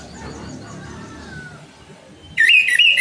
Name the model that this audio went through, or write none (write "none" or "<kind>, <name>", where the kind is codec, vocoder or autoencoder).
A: none